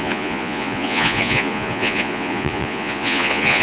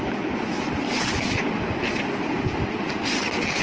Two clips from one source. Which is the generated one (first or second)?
first